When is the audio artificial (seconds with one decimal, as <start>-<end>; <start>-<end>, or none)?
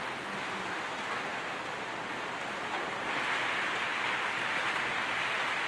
none